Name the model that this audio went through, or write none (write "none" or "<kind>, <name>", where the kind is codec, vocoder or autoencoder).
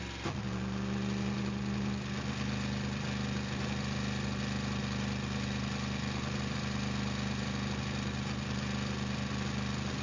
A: none